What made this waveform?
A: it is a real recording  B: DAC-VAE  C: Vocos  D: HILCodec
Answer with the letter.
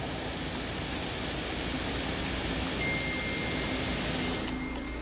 A